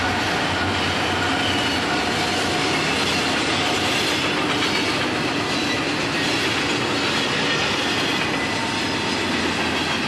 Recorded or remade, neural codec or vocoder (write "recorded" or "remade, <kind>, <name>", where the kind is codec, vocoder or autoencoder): recorded